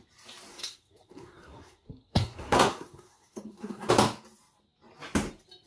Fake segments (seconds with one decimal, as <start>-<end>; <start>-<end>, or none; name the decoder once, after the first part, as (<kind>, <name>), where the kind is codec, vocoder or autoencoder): 0.5-3.9 (codec, SNAC)